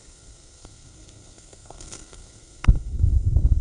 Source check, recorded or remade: remade